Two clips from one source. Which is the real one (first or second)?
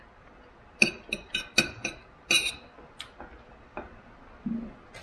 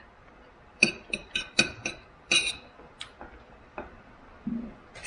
first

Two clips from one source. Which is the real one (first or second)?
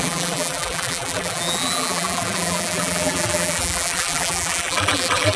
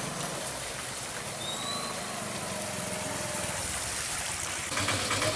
second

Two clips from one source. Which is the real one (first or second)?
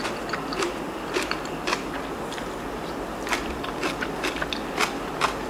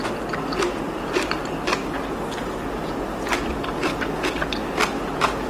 second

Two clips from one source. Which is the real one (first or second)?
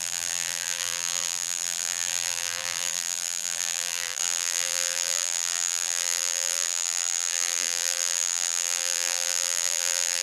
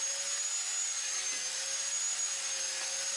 second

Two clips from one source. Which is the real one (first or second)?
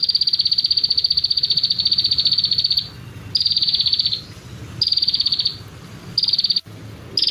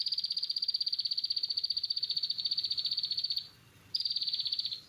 first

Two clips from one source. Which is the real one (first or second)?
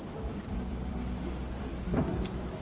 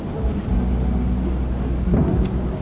second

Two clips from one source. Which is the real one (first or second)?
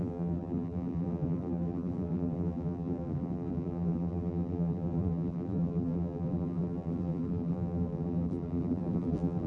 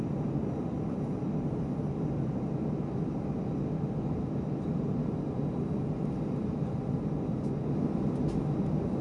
second